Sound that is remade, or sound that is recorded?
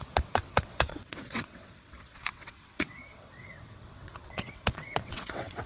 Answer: remade